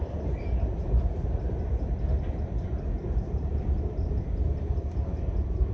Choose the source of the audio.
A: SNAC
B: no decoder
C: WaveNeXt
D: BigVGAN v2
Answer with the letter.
D